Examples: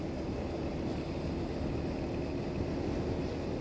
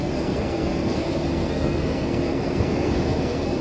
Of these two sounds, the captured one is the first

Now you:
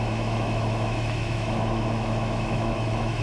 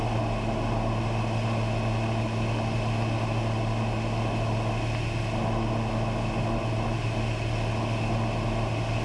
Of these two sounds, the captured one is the second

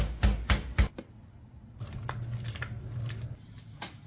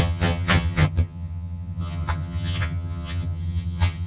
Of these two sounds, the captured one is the first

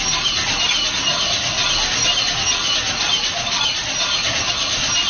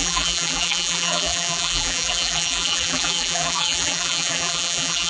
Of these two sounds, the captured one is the first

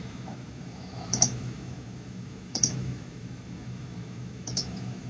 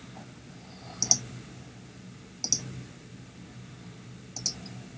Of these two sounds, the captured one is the second